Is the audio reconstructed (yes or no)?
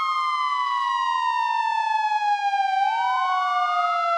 no